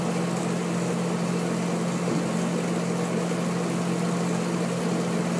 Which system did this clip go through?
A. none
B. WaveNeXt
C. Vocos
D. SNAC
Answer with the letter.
A